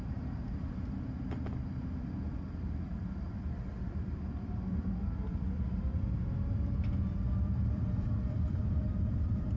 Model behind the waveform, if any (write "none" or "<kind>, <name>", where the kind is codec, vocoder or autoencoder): vocoder, BigVGAN v2